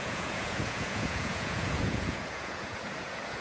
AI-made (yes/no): yes